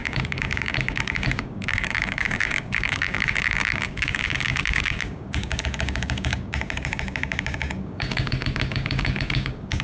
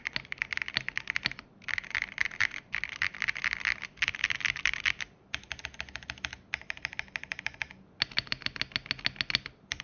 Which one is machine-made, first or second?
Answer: first